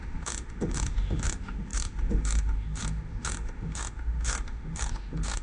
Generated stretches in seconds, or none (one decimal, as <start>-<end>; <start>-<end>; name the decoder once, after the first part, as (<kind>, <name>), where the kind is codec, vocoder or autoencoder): 0.0-5.4 (autoencoder, DAC-VAE)